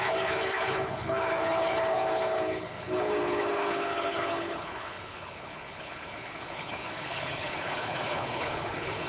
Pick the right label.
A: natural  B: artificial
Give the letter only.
B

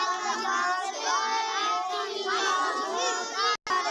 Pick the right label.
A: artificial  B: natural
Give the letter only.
B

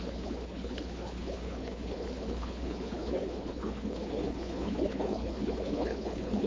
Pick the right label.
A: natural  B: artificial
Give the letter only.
B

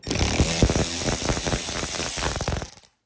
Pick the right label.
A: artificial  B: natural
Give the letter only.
B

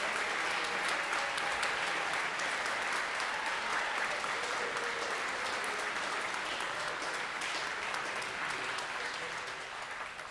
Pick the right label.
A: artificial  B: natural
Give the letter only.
B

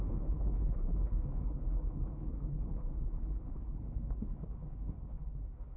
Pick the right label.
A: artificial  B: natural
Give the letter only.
A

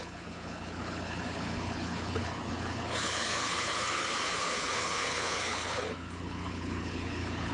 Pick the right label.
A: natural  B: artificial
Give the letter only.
B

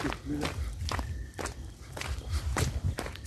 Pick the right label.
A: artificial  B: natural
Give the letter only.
B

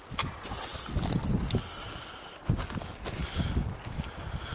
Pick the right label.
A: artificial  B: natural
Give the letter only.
B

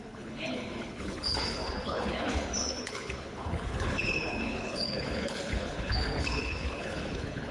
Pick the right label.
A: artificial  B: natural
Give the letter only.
A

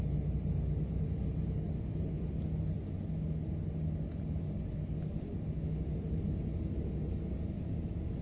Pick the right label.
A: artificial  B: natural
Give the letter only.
B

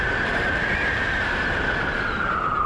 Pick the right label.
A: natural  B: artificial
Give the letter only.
A